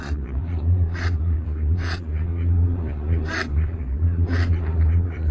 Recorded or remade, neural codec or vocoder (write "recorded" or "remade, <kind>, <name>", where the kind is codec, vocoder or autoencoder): remade, vocoder, Vocos